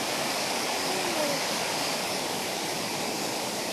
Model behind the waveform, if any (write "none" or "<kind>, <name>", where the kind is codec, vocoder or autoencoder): codec, DAC